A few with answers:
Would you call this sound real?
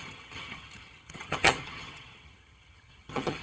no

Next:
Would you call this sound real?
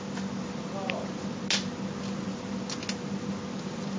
yes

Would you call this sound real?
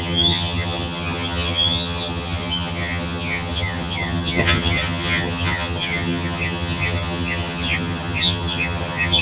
no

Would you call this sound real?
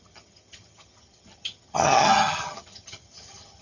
no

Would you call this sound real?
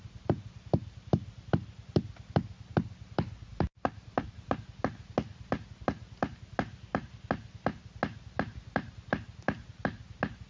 yes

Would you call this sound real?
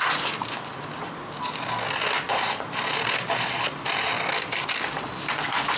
yes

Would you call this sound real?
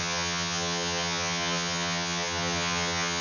no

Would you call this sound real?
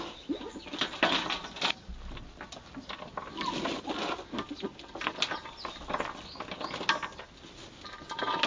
yes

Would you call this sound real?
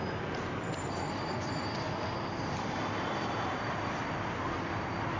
yes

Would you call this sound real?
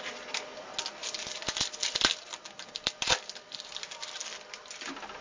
yes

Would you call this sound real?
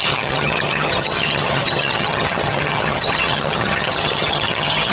no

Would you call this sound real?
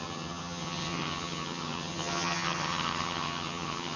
no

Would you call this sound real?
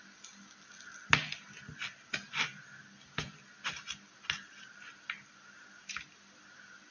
yes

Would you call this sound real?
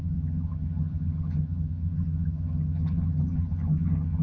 no